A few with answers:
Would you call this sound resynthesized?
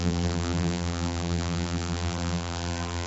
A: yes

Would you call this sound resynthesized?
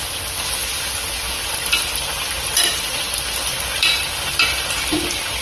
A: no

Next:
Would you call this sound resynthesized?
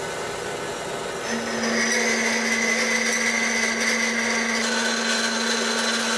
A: no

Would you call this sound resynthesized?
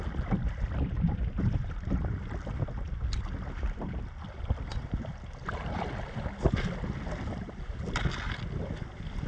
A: no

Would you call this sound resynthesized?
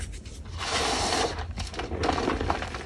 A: no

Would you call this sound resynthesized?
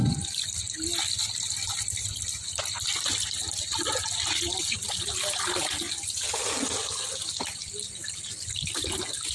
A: no